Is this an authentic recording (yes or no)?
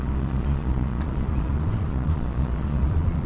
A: no